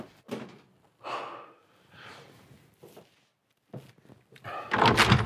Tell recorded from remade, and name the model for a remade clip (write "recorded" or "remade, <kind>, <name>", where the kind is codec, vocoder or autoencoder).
recorded